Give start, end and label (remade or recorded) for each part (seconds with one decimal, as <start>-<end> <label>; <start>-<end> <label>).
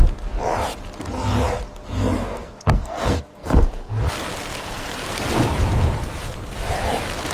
0.0-2.2 recorded; 2.2-3.9 remade; 3.9-4.5 recorded; 4.5-5.4 remade; 5.4-7.3 recorded